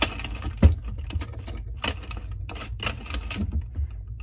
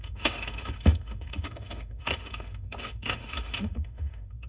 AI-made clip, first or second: second